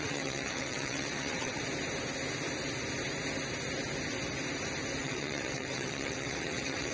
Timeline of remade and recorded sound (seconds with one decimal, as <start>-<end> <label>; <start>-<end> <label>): 0.0-1.6 remade; 1.6-5.0 recorded; 5.0-6.9 remade